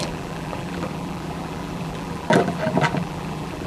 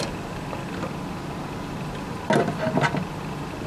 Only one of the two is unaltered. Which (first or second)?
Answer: second